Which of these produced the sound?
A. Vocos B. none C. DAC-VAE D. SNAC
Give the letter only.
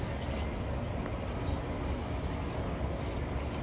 B